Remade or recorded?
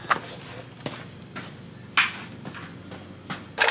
recorded